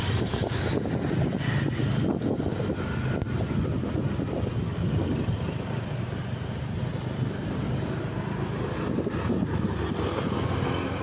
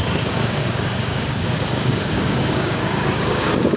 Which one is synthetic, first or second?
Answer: second